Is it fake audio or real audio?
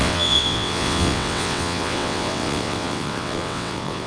fake